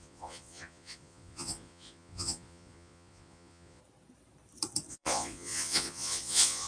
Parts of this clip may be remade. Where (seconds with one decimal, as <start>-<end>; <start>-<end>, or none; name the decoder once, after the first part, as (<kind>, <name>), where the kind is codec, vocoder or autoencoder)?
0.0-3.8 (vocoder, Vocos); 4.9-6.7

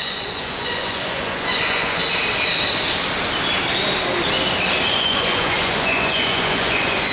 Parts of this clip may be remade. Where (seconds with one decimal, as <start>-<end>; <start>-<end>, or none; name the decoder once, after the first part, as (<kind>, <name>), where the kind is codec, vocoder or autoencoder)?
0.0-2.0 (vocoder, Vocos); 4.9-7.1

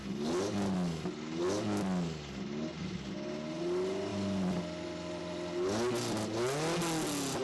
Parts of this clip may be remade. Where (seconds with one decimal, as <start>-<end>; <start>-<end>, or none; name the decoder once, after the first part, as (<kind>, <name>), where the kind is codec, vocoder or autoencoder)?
none

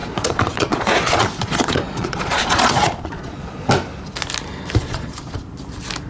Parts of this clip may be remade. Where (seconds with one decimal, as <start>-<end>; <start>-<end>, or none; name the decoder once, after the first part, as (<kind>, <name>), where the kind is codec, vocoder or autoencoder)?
0.0-3.7 (vocoder, Vocos); 4.8-5.4